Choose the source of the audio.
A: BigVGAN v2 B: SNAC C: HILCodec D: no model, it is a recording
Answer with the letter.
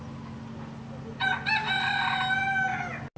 D